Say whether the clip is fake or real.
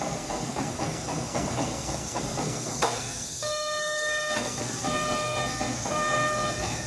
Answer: fake